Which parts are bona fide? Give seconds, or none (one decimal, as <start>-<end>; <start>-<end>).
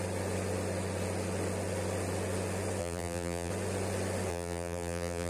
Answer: 0.0-2.8; 3.5-4.3